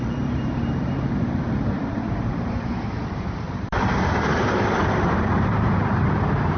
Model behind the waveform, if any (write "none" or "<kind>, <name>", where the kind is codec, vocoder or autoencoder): vocoder, BigVGAN v2